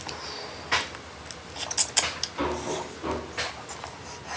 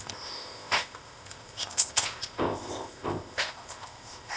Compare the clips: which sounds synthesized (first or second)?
second